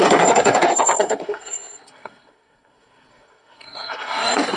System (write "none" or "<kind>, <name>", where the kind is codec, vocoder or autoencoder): codec, SNAC